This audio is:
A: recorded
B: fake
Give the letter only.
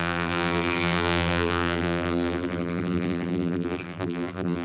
B